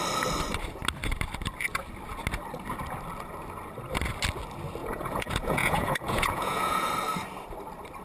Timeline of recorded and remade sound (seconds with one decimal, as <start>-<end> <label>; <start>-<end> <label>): 0.0-4.8 recorded; 4.8-6.9 remade; 6.9-8.0 recorded